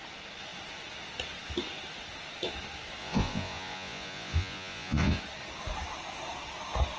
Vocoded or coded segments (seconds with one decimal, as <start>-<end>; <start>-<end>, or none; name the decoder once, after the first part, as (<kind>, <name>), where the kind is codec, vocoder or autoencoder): 3.0-5.2 (vocoder, Vocos)